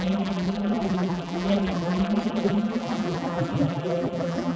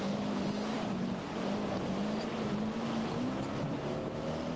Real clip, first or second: second